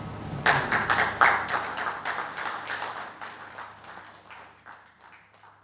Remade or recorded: recorded